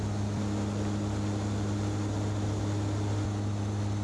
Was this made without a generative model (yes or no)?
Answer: yes